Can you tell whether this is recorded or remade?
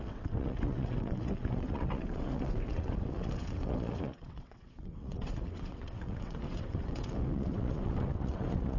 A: remade